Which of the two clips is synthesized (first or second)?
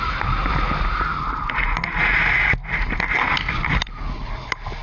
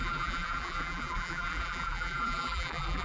second